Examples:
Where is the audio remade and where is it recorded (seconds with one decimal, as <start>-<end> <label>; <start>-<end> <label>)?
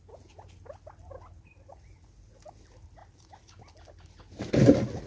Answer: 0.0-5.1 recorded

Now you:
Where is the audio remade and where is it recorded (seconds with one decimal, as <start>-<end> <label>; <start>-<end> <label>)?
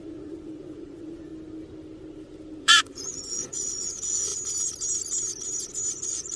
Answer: 0.0-1.3 remade; 1.3-2.6 recorded; 2.6-4.3 remade; 4.3-5.9 recorded; 5.9-6.4 remade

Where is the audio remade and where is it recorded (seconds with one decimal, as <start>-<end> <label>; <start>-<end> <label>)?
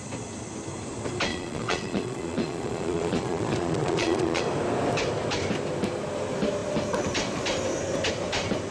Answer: 0.0-1.3 recorded; 1.3-4.4 remade; 4.4-8.7 recorded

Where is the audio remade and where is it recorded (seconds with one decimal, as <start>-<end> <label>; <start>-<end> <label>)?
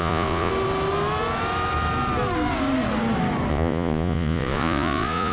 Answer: 0.0-0.5 remade; 0.5-3.5 recorded; 3.5-5.3 remade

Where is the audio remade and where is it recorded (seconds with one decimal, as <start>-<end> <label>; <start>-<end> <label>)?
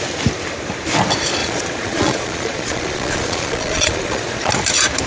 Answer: 0.0-1.4 recorded; 1.4-4.5 remade; 4.5-5.1 recorded